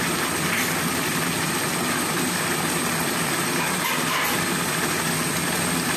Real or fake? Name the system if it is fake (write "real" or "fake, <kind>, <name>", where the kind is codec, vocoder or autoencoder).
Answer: real